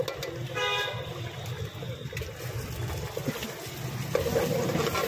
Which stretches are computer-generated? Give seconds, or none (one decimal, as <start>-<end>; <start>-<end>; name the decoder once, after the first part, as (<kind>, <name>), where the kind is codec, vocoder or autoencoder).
none